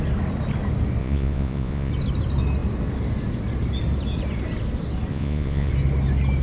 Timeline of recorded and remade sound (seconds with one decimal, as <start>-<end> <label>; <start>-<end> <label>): 0.0-1.0 recorded; 1.0-1.9 remade; 1.9-5.1 recorded; 5.1-5.7 remade; 5.7-6.4 recorded